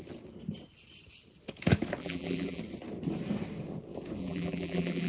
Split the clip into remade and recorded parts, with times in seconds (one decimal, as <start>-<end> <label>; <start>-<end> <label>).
0.0-2.0 recorded; 2.0-2.6 remade; 2.6-4.2 recorded; 4.2-5.1 remade

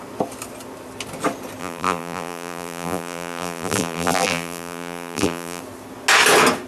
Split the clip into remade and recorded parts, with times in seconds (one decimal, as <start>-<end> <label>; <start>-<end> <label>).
0.0-1.6 recorded; 1.6-5.6 remade; 5.6-6.7 recorded

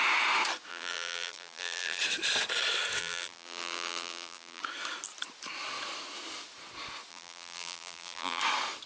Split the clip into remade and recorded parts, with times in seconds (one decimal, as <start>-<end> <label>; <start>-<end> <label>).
0.0-0.7 recorded; 0.7-2.0 remade; 2.0-3.0 recorded; 3.0-4.6 remade; 4.6-7.1 recorded; 7.1-8.4 remade; 8.4-8.9 recorded